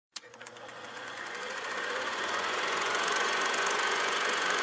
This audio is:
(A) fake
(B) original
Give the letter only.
A